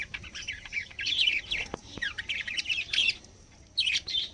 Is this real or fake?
fake